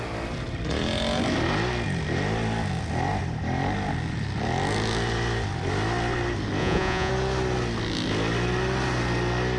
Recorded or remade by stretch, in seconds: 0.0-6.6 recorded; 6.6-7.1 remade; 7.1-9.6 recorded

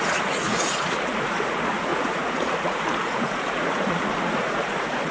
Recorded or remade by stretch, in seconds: 0.0-5.1 remade

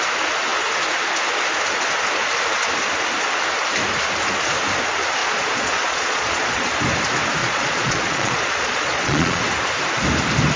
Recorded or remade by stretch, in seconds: 0.0-5.2 recorded; 5.2-6.7 remade; 6.7-7.4 recorded; 7.4-9.4 remade; 9.4-10.6 recorded

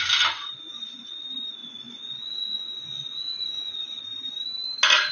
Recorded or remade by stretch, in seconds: 0.0-1.6 recorded; 1.6-4.0 remade; 4.0-5.1 recorded

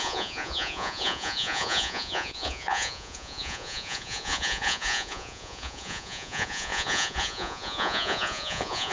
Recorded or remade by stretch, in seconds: 0.0-8.9 remade